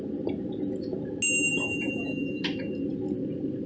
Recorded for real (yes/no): yes